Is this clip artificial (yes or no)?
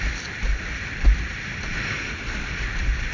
no